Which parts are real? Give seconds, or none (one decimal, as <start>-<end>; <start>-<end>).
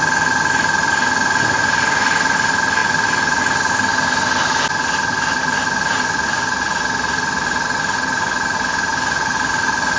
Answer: 0.0-10.0